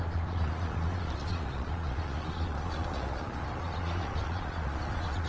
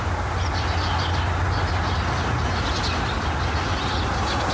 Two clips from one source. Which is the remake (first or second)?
first